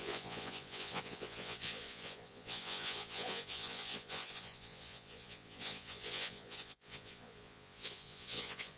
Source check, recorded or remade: remade